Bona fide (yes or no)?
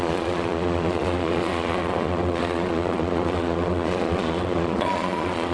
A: no